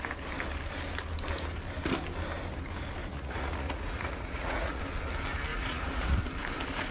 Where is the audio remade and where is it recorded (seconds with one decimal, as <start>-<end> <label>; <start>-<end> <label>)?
0.0-3.0 recorded; 3.0-4.8 remade; 4.8-5.5 recorded; 5.5-6.2 remade; 6.2-6.9 recorded